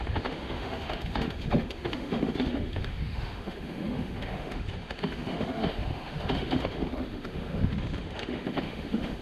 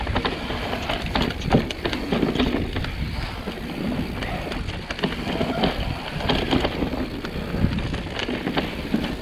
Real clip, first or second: second